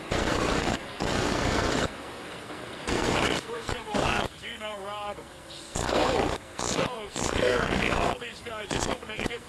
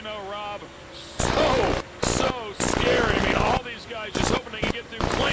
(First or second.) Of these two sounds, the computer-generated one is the first